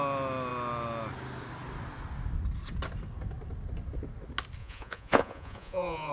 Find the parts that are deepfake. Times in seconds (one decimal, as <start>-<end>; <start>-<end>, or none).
4.6-6.1